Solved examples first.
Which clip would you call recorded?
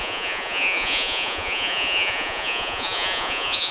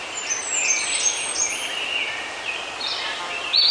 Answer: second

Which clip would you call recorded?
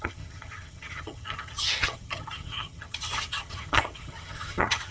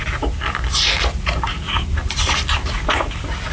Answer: second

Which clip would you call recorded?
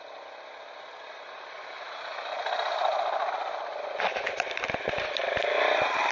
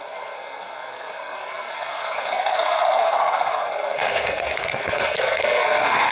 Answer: first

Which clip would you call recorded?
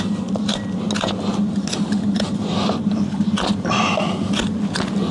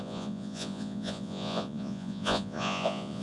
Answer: first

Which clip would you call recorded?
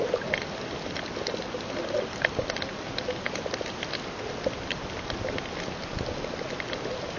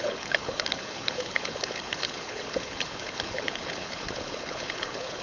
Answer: first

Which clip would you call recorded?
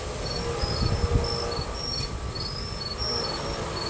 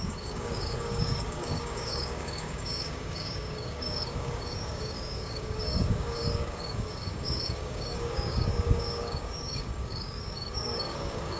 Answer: first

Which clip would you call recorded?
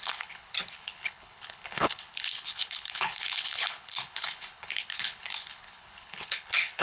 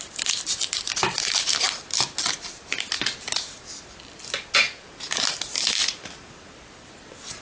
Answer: second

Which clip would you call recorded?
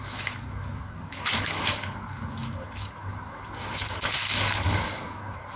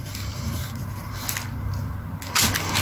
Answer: second